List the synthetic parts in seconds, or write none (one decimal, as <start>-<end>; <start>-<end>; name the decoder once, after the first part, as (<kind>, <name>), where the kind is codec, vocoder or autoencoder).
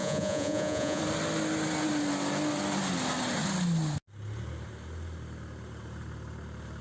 0.0-1.0 (vocoder, Vocos)